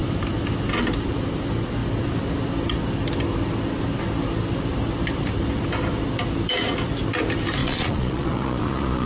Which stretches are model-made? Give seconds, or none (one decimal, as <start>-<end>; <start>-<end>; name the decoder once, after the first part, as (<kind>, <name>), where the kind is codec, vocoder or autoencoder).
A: 7.6-9.1 (vocoder, Vocos)